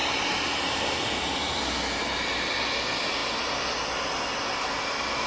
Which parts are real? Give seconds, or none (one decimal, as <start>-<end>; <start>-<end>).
1.6-5.3